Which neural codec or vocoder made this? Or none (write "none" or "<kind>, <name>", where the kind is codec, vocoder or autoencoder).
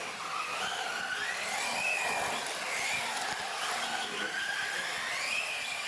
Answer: none